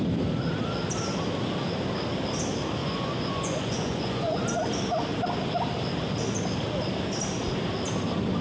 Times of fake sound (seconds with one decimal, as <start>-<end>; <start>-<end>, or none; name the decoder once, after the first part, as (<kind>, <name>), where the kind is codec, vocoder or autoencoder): 2.8-4.4 (vocoder, Vocos)